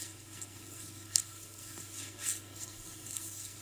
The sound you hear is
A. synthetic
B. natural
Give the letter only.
A